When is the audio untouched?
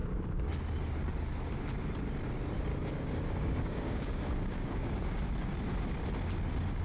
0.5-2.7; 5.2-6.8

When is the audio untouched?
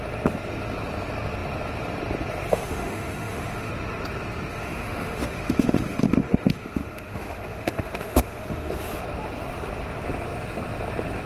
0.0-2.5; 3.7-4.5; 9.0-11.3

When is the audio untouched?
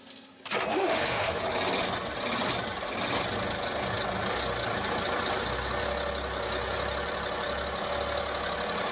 0.0-0.7; 1.4-8.9